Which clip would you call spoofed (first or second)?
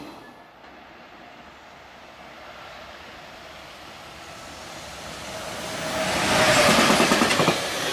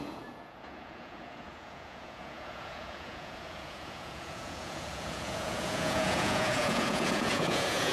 second